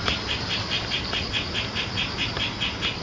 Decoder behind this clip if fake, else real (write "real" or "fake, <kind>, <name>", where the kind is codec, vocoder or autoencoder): real